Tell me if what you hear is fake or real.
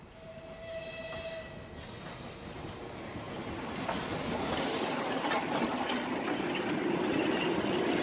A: real